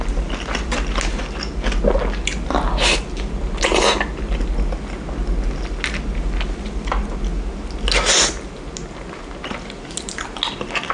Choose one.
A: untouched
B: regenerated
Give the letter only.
A